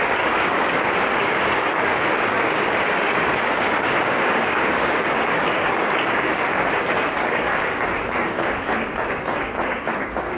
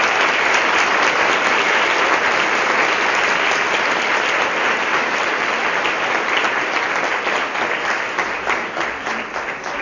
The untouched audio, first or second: second